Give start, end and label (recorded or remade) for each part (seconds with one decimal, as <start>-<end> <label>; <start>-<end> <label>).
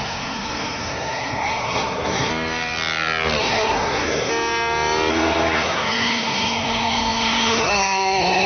0.0-2.3 remade; 2.3-3.4 recorded; 3.4-4.3 remade; 4.3-5.1 recorded; 5.1-8.5 remade